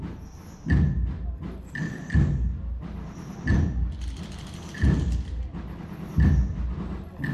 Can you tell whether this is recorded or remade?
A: recorded